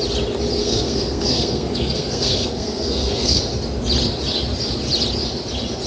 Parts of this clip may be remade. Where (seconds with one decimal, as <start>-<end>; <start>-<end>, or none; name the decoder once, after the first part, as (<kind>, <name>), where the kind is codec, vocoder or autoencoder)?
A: 0.6-3.4 (codec, SNAC)